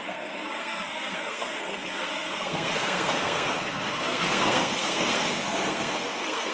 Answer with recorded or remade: remade